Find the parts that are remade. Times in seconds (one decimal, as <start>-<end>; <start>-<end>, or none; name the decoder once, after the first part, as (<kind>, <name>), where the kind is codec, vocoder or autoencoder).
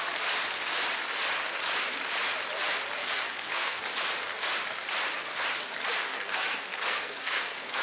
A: 3.0-3.8 (codec, SNAC); 6.1-7.8